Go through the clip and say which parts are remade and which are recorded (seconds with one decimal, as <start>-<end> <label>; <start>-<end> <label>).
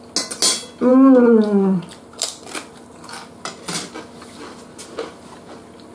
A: 0.0-5.9 recorded